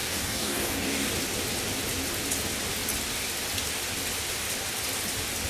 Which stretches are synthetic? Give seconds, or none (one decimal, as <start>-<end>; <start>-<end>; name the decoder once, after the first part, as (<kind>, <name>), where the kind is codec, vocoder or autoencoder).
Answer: 0.0-1.1 (codec, DAC)